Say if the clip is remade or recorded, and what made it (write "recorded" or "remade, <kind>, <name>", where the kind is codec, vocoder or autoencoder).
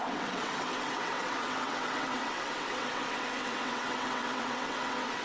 remade, vocoder, WaveNeXt